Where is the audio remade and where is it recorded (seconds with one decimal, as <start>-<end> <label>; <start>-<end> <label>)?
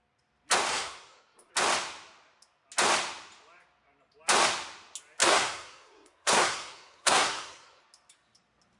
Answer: 0.0-0.7 recorded; 0.7-1.5 remade; 1.5-5.2 recorded; 5.2-7.8 remade; 7.8-8.8 recorded